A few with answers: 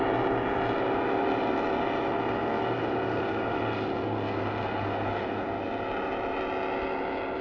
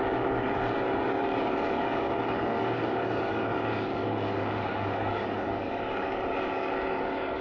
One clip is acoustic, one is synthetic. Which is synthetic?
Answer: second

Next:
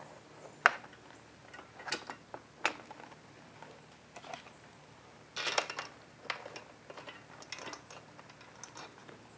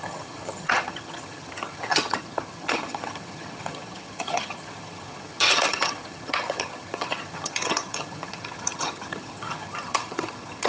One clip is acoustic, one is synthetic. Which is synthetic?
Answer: second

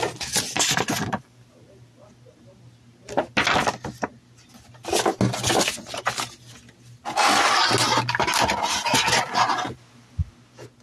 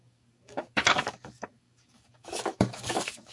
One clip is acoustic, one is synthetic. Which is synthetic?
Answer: second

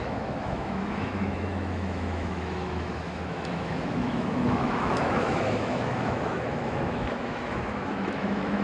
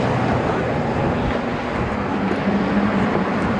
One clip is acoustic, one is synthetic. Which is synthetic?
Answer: first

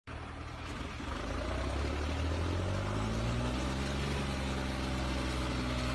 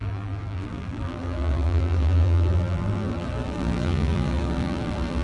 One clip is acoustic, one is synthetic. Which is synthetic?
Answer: second